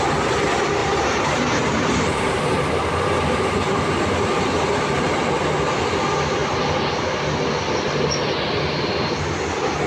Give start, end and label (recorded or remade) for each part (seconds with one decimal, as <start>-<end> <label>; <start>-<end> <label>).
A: 0.0-0.8 recorded; 0.8-5.0 remade; 5.0-9.9 recorded